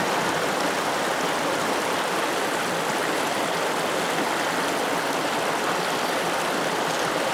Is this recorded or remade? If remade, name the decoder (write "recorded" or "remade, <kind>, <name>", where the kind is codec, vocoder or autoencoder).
recorded